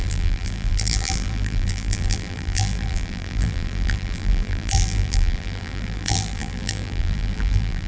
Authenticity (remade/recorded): remade